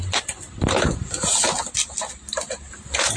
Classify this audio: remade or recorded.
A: recorded